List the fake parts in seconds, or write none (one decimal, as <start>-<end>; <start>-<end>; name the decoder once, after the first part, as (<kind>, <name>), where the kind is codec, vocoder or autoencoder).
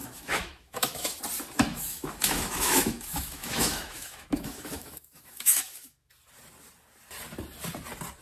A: 0.0-1.2 (autoencoder, DAC-VAE); 1.7-6.1